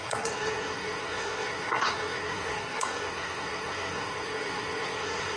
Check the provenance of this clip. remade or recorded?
remade